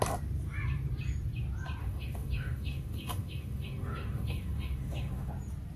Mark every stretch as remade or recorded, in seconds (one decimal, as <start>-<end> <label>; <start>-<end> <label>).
0.0-1.8 recorded; 1.8-5.3 remade; 5.3-5.8 recorded